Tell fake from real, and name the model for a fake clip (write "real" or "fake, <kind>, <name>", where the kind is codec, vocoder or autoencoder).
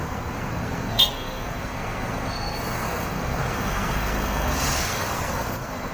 fake, codec, SNAC